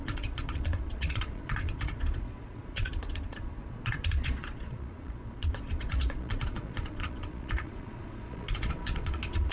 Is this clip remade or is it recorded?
remade